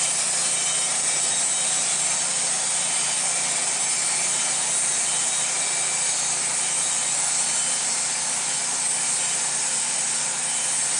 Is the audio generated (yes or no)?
no